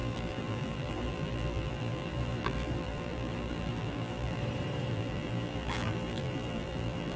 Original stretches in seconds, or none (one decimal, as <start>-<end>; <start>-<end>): 4.4-4.9